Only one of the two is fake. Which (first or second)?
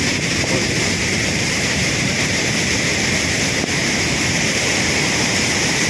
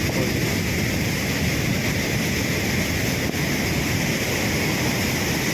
first